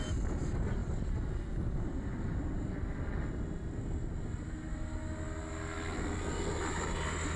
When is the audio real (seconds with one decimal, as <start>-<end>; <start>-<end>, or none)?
0.0-7.4